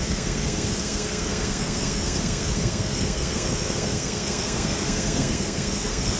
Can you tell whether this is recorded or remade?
remade